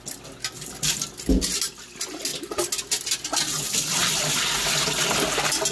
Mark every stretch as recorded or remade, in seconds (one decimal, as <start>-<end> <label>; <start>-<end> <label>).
0.0-5.7 recorded